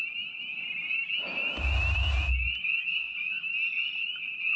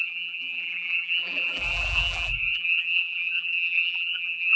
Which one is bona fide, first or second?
first